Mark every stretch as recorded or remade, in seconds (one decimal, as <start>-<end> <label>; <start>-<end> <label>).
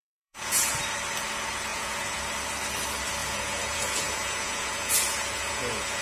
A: 0.0-0.8 remade; 0.8-1.7 recorded; 1.7-2.2 remade; 2.2-3.2 recorded; 3.2-6.0 remade